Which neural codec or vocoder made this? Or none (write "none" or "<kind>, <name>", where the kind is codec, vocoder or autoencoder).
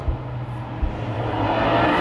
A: none